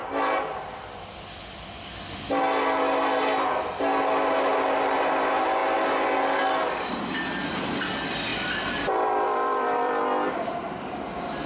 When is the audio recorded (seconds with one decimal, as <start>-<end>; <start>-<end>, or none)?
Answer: 0.0-8.3; 10.0-11.5